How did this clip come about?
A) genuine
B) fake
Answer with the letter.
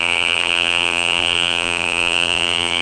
B